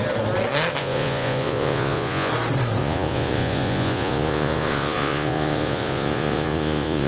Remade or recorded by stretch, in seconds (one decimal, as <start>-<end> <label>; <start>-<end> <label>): 0.0-0.8 recorded; 0.8-2.3 remade; 2.3-2.8 recorded; 2.8-7.1 remade